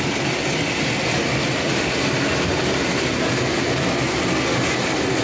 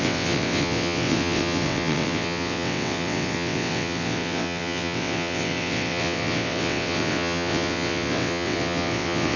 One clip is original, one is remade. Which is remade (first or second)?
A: second